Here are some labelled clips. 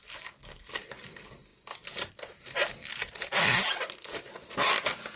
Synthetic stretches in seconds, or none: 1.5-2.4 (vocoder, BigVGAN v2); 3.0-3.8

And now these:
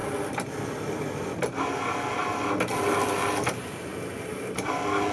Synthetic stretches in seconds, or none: none

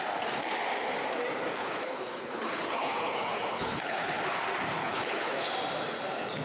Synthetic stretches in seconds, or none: 1.6-4.1 (codec, HILCodec); 4.8-5.5

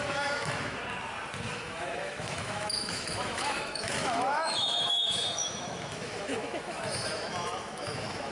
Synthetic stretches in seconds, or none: 0.0-0.8 (autoencoder, DAC-VAE); 1.5-8.3

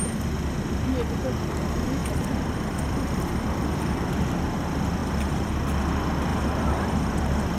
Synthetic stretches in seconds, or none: 2.0-4.1 (vocoder, BigVGAN v2); 5.0-5.5; 6.3-7.1

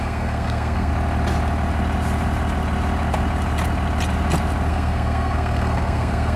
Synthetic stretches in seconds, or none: 0.0-0.9 (codec, SNAC); 4.7-6.4